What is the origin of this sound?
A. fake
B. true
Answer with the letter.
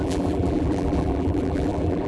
A